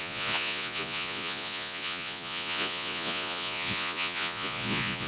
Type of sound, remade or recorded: remade